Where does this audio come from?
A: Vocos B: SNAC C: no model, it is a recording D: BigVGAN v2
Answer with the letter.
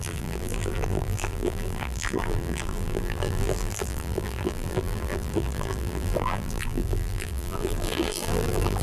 D